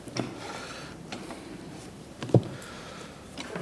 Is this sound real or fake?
fake